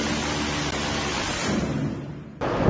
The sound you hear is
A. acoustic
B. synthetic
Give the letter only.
A